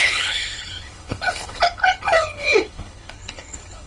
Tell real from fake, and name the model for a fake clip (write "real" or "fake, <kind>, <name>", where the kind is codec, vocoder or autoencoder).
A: fake, codec, HILCodec